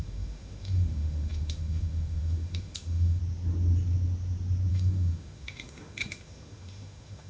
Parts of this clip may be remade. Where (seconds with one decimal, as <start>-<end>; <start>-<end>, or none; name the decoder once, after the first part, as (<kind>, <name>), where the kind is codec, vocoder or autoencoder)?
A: 0.0-3.2 (autoencoder, DAC-VAE); 4.7-7.3

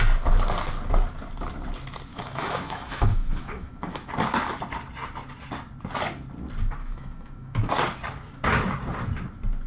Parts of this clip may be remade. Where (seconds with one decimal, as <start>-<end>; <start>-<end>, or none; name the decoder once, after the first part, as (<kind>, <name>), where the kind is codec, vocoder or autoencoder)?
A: 2.1-4.1 (autoencoder, DAC-VAE); 6.8-7.7

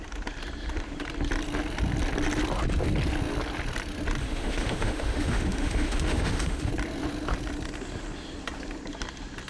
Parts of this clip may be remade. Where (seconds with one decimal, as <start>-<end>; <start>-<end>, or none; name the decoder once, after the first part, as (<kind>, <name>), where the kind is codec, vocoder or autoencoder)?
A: 4.2-6.7 (autoencoder, DAC-VAE)

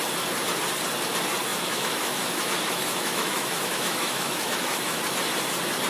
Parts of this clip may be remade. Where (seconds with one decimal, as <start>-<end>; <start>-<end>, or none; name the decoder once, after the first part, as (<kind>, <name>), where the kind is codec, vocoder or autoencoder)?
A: 1.5-5.0 (autoencoder, DAC-VAE)